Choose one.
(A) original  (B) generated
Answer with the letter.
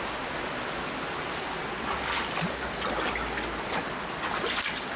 A